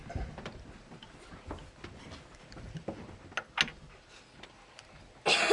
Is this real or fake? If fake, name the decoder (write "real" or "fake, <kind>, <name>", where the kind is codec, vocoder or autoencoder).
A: real